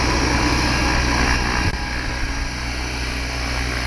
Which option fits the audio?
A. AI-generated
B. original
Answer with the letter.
B